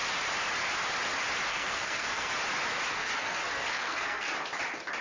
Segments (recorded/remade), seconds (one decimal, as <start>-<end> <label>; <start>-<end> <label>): 0.0-1.5 recorded; 1.5-2.3 remade; 2.3-2.9 recorded; 2.9-4.3 remade; 4.3-5.0 recorded